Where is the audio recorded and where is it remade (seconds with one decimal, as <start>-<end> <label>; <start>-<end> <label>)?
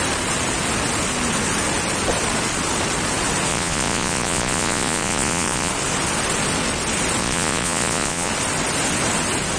0.0-3.5 recorded; 3.5-5.7 remade; 5.7-7.2 recorded; 7.2-8.3 remade; 8.3-9.6 recorded